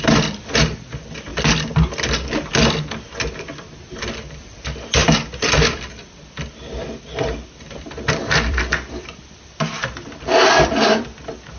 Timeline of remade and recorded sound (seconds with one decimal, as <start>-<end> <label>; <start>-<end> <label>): 0.0-1.3 remade; 1.3-4.2 recorded; 4.2-11.6 remade

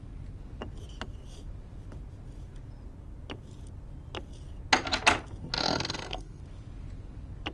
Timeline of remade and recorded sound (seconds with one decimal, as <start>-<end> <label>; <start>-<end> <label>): 0.0-5.6 recorded; 5.6-6.4 remade; 6.4-7.5 recorded

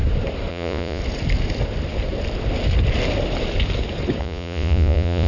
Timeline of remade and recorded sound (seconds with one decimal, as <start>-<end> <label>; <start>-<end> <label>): 0.0-0.5 recorded; 0.5-1.0 remade; 1.0-4.2 recorded; 4.2-5.3 remade

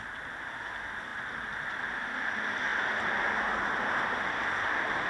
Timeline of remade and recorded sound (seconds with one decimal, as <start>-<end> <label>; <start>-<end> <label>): 0.0-5.1 recorded

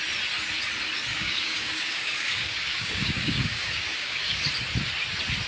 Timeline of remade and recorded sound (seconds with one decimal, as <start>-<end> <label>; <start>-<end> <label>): 0.0-1.1 recorded; 1.1-4.4 remade; 4.4-5.5 recorded

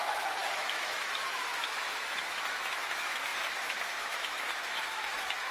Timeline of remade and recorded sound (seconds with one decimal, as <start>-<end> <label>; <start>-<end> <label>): 0.0-5.5 remade